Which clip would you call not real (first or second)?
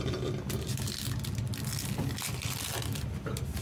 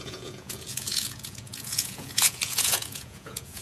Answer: second